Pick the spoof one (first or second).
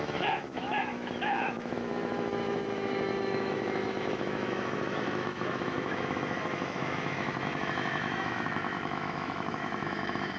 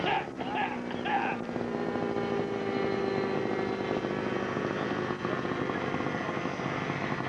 first